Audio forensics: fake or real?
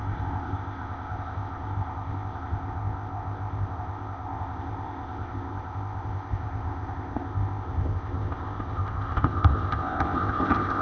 fake